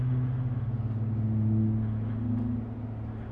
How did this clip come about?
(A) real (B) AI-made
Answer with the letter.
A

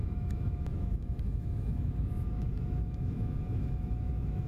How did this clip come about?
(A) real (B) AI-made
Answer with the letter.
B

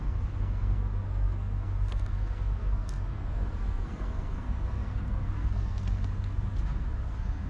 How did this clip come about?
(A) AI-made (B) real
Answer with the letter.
A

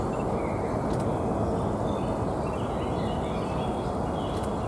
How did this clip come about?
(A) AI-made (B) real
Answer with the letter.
B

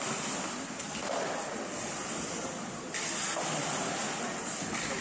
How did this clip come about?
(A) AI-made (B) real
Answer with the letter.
B